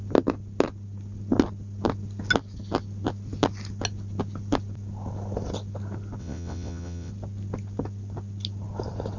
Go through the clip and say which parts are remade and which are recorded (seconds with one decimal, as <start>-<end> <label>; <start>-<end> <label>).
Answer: 0.0-6.2 recorded; 6.2-7.1 remade; 7.1-9.2 recorded